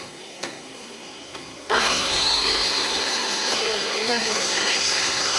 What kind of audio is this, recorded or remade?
remade